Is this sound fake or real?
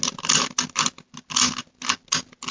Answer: real